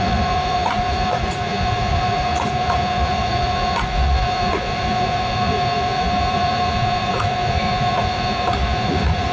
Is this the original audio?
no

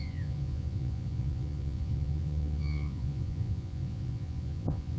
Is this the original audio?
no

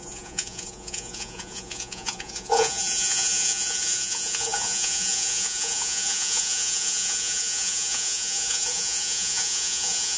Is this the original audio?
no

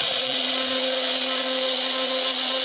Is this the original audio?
no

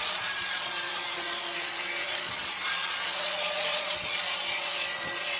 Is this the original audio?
no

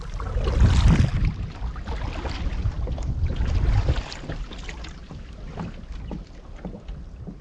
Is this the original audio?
yes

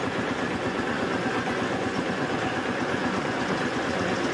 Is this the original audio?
no